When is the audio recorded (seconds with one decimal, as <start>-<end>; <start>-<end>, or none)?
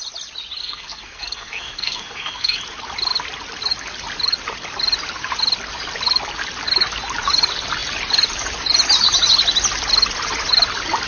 0.0-0.6; 2.6-11.1